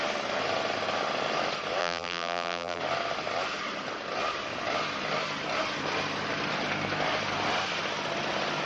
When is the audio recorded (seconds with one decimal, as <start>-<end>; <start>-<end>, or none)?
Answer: 0.0-1.8; 2.8-8.7